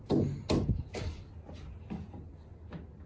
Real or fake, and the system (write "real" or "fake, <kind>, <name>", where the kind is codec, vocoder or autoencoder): real